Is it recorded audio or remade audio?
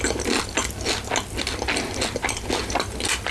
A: recorded